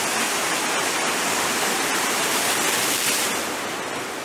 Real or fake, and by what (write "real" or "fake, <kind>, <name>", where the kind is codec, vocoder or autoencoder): real